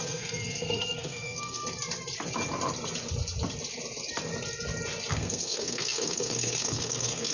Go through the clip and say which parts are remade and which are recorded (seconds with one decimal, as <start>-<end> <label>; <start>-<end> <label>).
0.0-1.6 remade; 1.6-5.1 recorded; 5.1-7.3 remade